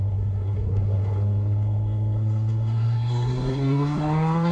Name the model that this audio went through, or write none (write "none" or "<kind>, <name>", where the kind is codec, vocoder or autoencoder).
codec, SNAC